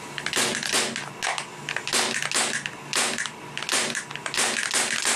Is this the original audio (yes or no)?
yes